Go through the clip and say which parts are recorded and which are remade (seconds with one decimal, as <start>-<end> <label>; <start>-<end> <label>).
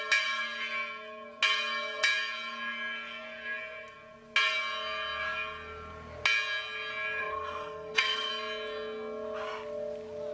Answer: 0.0-7.2 recorded; 7.2-8.3 remade; 8.3-10.3 recorded